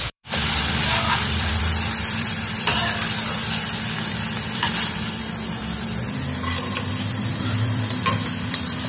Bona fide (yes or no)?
no